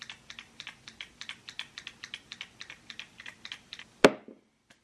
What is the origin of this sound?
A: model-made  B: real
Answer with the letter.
B